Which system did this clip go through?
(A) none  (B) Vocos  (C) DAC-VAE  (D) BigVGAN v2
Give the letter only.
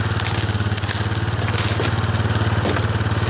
A